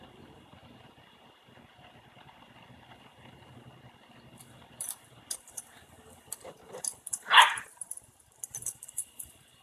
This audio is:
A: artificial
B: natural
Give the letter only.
A